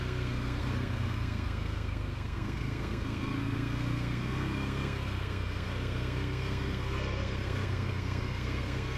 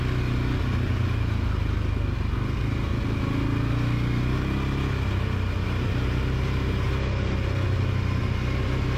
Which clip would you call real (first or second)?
second